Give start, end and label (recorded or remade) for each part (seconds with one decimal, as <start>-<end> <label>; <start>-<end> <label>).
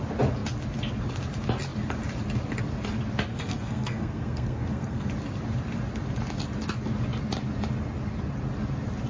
0.0-3.3 recorded; 3.3-5.1 remade; 5.1-9.1 recorded